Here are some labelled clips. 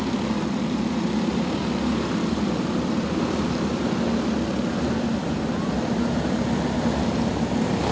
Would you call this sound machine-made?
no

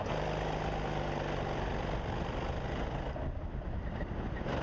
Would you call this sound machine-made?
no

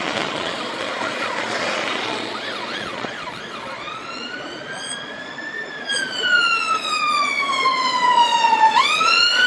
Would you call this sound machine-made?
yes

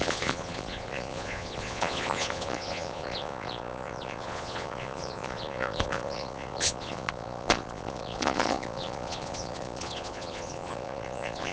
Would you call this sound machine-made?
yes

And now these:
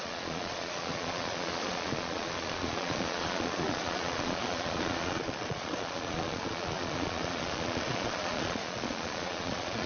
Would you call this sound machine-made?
yes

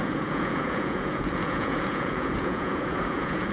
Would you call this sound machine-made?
yes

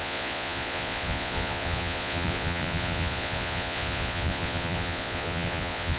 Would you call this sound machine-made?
yes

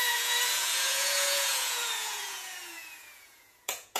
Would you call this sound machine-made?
yes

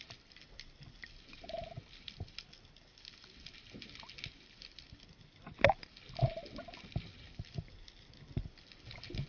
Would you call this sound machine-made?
no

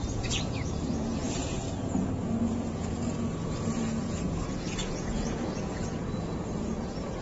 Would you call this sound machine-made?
yes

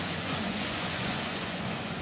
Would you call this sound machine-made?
yes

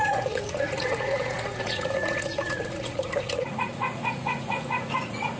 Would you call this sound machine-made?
yes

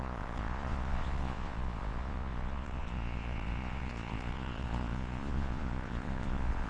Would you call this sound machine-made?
yes